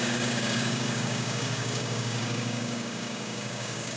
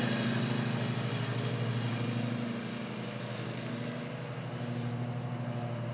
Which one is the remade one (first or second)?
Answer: first